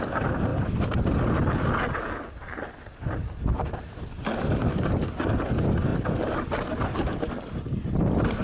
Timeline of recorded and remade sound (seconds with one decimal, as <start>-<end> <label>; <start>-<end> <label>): 0.0-8.4 recorded